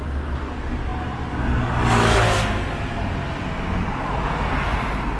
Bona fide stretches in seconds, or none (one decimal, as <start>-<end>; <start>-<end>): 0.0-5.2